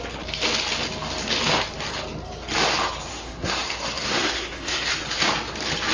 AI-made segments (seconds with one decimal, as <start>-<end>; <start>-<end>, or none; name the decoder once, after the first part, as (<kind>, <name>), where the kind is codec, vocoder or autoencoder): 3.1-4.9 (codec, SNAC)

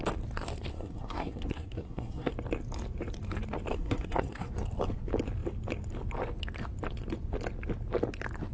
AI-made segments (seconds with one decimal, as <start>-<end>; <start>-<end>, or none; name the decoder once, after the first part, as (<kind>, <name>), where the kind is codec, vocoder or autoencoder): 0.7-2.3 (codec, SNAC); 3.7-4.5

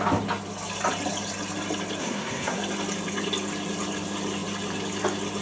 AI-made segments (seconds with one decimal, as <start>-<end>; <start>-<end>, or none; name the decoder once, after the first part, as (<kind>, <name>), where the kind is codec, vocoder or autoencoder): 2.0-2.6 (codec, SNAC)